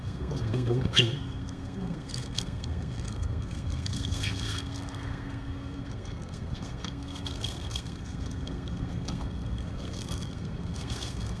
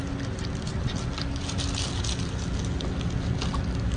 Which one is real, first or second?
second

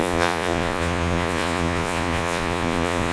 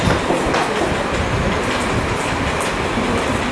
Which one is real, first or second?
second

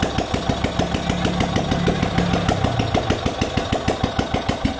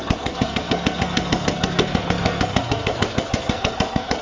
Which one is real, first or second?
first